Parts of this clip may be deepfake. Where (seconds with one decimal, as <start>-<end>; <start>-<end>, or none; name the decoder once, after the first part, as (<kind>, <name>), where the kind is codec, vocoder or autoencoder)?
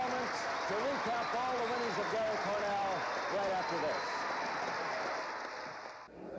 none